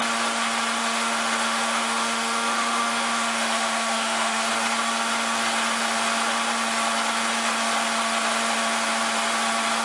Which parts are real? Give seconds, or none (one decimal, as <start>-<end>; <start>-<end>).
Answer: 0.0-0.8; 4.5-9.8